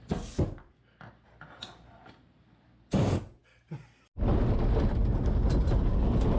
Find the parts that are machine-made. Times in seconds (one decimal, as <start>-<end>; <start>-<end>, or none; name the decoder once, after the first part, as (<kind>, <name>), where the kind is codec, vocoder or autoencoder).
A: none